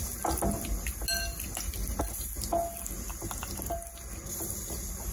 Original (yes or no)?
yes